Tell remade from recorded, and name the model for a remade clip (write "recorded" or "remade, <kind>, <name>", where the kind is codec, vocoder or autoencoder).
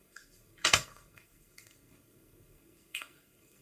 remade, codec, SNAC